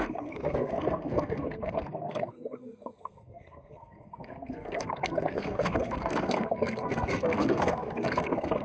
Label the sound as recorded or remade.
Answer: remade